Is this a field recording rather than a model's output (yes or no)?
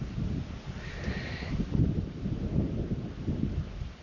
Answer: yes